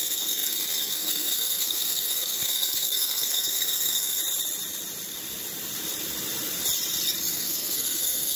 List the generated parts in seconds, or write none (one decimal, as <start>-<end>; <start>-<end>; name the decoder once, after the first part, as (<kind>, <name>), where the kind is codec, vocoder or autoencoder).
0.0-4.2 (codec, SNAC); 7.3-8.4